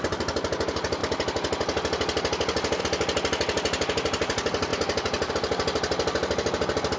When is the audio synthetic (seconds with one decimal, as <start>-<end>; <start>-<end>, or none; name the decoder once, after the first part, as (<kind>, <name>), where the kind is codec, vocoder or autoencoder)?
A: none